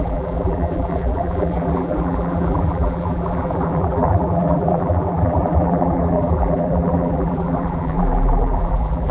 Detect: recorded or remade remade